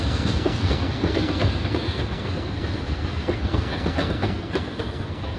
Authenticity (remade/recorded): remade